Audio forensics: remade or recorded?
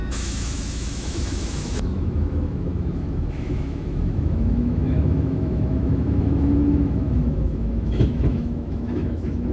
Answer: remade